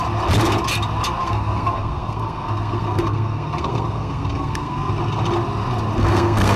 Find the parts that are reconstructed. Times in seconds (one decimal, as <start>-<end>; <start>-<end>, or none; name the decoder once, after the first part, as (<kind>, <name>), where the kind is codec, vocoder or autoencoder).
1.2-4.9 (codec, SNAC); 6.0-6.6